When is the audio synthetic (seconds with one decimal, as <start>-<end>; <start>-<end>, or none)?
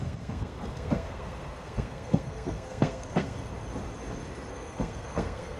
0.0-3.5; 4.5-5.6